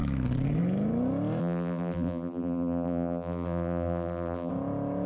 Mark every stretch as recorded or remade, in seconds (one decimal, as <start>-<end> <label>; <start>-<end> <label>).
0.0-1.4 recorded; 1.4-4.5 remade; 4.5-5.1 recorded

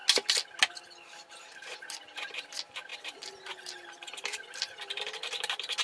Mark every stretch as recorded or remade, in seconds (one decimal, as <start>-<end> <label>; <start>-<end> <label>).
0.0-1.4 recorded; 1.4-5.8 remade

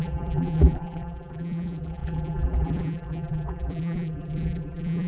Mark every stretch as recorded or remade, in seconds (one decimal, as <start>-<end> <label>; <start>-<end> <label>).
0.0-5.1 remade

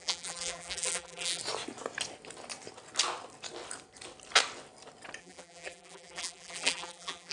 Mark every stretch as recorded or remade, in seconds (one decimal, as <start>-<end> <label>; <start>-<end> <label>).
0.0-1.4 remade; 1.4-5.2 recorded; 5.2-7.3 remade

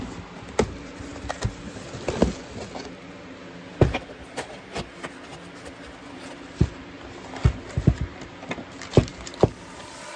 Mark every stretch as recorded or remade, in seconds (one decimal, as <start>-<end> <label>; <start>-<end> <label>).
0.0-10.2 recorded

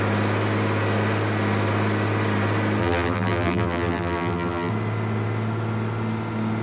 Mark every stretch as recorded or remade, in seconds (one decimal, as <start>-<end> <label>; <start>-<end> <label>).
0.0-2.8 recorded; 2.8-4.7 remade; 4.7-6.6 recorded

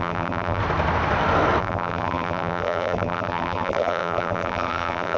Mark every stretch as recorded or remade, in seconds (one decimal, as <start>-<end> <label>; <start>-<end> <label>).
0.0-0.6 remade; 0.6-1.6 recorded; 1.6-5.2 remade

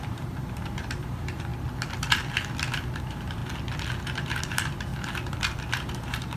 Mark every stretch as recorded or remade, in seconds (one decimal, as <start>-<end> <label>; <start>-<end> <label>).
0.0-1.5 remade; 1.5-3.0 recorded; 3.0-3.4 remade; 3.4-4.4 recorded; 4.4-4.9 remade; 4.9-5.7 recorded; 5.7-6.4 remade